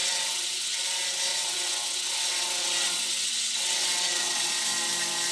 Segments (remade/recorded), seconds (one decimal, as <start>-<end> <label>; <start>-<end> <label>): 0.0-0.8 remade; 0.8-1.3 recorded; 1.3-4.5 remade; 4.5-5.3 recorded

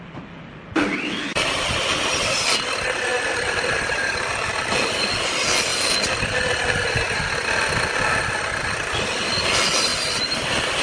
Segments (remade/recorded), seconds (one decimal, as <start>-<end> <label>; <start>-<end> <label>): 0.0-10.8 recorded

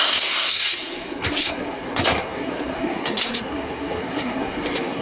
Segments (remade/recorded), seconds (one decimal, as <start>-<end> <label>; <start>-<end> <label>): 0.0-5.0 remade